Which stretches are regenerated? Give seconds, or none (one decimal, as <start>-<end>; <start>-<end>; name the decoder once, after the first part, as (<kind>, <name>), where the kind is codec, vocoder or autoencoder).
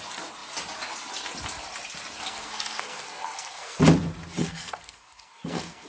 2.2-3.8 (codec, SNAC); 4.4-5.9